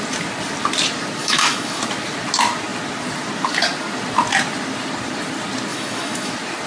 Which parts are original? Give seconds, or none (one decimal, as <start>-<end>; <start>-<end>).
0.0-1.2; 1.8-5.7; 6.3-6.7